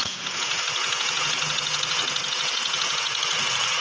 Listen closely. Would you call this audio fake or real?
fake